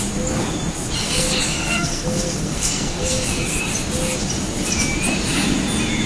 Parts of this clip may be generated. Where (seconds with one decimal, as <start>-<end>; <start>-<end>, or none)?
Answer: 1.0-3.6